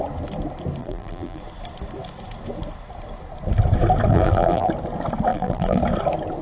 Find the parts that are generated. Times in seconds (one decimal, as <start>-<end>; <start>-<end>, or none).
0.8-1.4; 4.1-4.7; 5.3-5.8